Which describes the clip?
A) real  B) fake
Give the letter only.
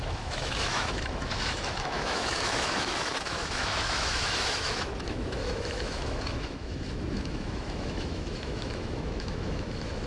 B